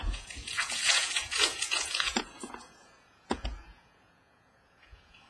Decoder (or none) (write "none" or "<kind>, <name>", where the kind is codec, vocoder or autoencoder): vocoder, Vocos